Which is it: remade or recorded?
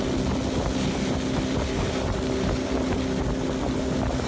recorded